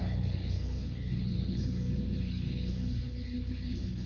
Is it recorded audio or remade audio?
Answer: remade